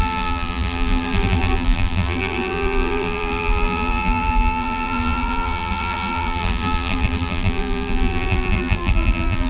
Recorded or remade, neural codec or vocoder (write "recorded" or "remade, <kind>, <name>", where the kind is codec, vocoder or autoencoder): remade, vocoder, BigVGAN v2